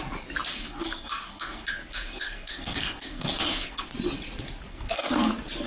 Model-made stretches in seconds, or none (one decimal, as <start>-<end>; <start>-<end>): 0.5-3.9; 4.7-5.3